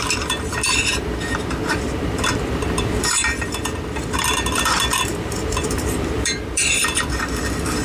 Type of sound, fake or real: fake